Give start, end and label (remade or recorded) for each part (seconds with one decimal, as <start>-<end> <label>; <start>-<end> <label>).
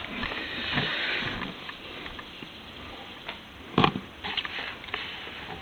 0.0-0.9 remade; 0.9-4.3 recorded; 4.3-5.6 remade